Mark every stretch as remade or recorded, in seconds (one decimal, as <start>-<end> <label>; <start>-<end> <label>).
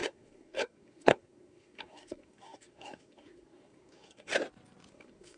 0.0-4.3 remade; 4.3-4.9 recorded; 4.9-5.4 remade